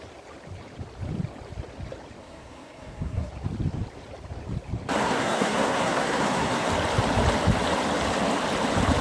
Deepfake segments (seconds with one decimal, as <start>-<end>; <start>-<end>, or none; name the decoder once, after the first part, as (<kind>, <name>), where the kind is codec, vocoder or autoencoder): 2.2-3.3 (codec, SNAC); 5.0-6.7